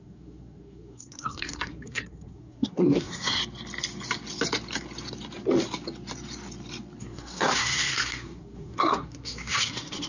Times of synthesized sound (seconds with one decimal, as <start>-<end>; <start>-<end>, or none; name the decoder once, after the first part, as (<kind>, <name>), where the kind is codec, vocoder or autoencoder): 0.0-3.4 (codec, SNAC); 7.0-10.1